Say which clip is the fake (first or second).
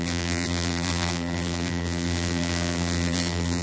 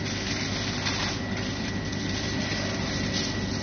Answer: first